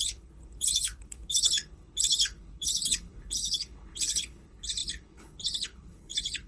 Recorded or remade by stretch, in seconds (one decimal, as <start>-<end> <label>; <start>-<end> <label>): 0.0-6.5 remade